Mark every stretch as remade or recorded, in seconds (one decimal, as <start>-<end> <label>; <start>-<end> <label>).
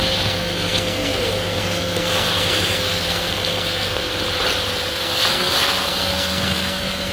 0.0-4.1 remade; 4.1-4.9 recorded; 4.9-7.1 remade